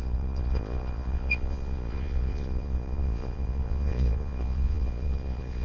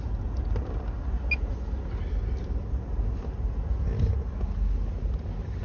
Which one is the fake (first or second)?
first